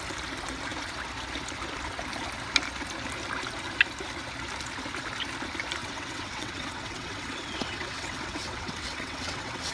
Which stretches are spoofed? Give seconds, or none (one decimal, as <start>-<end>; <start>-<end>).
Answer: 5.8-9.7